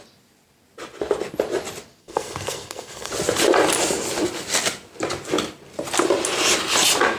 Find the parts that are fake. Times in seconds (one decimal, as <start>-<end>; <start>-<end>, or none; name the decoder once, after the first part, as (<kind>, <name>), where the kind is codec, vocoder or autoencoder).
2.0-3.1 (codec, SNAC)